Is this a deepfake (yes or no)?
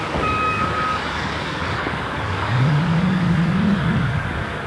yes